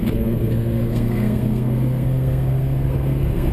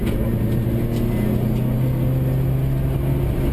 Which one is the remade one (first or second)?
first